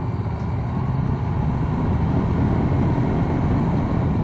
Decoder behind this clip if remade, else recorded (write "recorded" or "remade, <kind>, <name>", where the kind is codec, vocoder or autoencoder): recorded